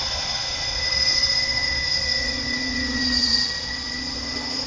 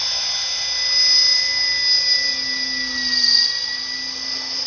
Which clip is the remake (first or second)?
first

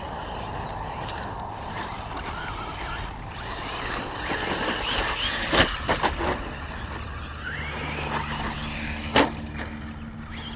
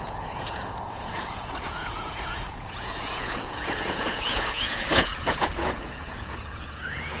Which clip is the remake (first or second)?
second